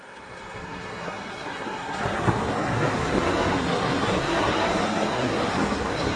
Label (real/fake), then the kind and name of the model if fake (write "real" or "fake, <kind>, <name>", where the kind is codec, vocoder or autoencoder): fake, codec, SNAC